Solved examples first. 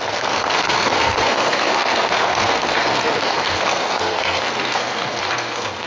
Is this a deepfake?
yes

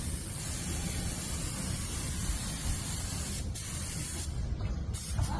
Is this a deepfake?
no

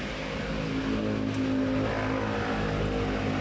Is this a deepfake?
no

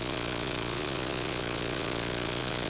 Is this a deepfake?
yes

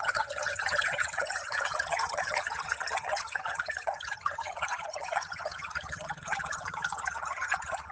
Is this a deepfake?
yes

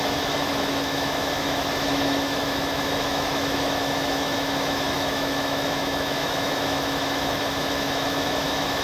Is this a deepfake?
yes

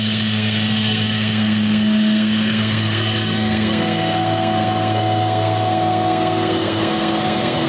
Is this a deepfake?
yes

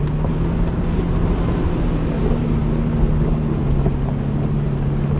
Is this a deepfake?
no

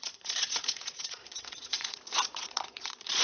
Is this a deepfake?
yes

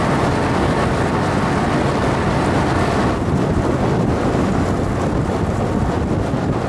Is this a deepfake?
no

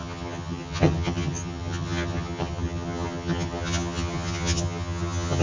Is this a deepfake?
yes